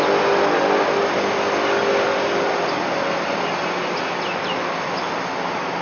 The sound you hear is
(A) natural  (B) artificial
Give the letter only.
A